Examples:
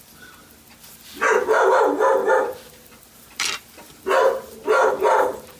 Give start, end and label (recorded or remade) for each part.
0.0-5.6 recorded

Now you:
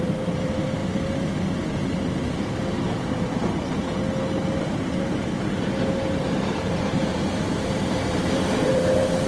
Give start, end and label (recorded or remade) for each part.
0.0-0.8 remade; 0.8-2.4 recorded; 2.4-3.4 remade; 3.4-6.3 recorded; 6.3-9.3 remade

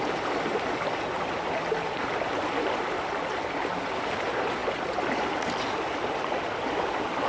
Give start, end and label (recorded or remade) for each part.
0.0-7.3 recorded

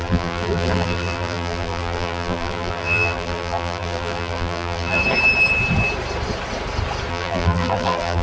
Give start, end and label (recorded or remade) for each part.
0.0-5.0 remade; 5.0-7.1 recorded; 7.1-8.2 remade

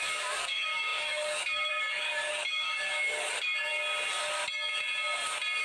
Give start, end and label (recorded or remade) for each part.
0.0-3.7 remade; 3.7-5.6 recorded